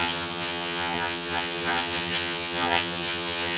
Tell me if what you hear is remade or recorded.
remade